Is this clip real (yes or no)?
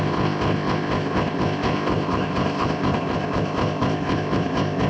no